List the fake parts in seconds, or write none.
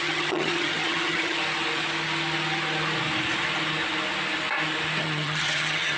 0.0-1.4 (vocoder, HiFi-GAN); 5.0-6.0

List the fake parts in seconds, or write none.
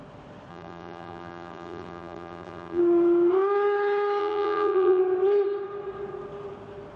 0.5-2.8 (vocoder, BigVGAN v2); 4.2-5.0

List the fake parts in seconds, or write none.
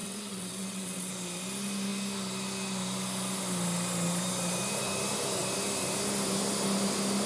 0.0-1.1 (vocoder, WaveNeXt)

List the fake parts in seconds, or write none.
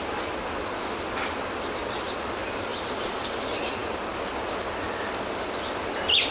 2.7-3.4 (vocoder, BigVGAN v2)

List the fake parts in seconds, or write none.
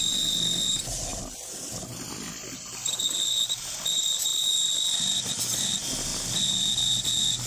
none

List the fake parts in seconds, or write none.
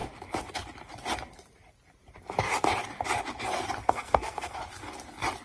3.8-4.6 (codec, SNAC)